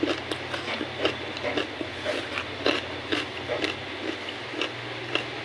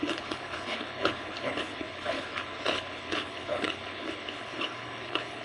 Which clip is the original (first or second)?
first